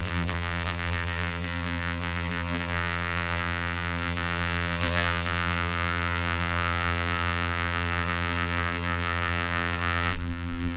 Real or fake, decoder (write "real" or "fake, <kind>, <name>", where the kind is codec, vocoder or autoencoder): fake, vocoder, BigVGAN v2